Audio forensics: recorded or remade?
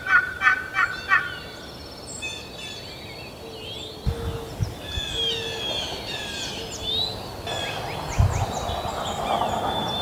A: recorded